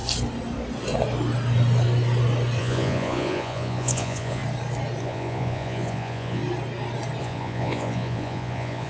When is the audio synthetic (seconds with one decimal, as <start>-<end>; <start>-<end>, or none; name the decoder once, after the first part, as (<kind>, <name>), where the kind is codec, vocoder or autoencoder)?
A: 2.6-4.4 (vocoder, Vocos); 5.0-6.4; 7.2-8.9